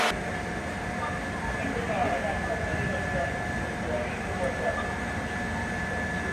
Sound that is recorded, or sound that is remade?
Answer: recorded